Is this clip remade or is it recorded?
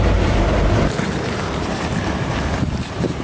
remade